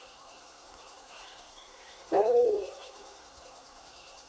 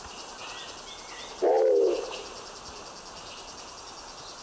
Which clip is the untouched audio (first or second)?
second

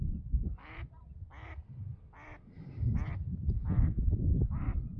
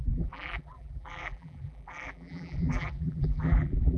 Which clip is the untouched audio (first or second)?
first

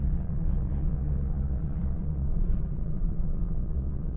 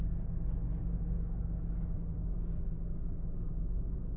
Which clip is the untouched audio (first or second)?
second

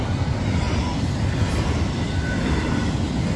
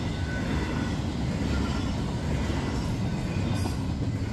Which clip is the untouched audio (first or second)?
second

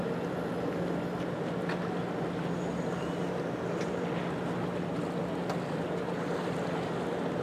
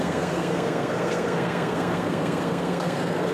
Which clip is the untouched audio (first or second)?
first